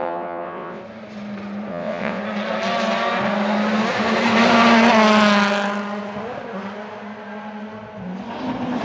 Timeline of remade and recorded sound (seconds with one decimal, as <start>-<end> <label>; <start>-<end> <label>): 0.0-0.8 remade; 0.8-1.7 recorded; 1.7-2.2 remade; 2.2-8.8 recorded